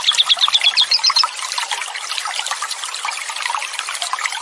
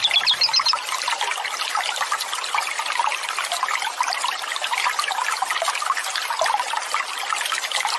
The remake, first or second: first